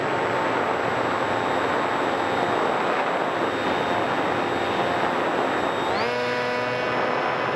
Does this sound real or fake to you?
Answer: real